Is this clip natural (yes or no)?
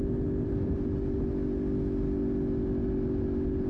yes